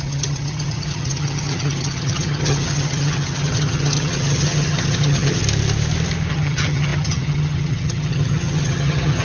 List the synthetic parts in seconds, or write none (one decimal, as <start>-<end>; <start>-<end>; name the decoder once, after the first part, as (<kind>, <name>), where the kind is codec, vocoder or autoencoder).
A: 0.0-5.4 (vocoder, HiFi-GAN); 6.3-9.2